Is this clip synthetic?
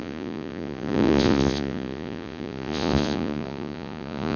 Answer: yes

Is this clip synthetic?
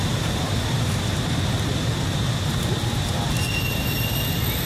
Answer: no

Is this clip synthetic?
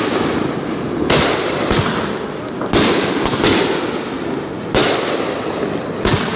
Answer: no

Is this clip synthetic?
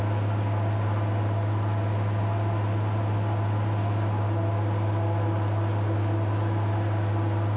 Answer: no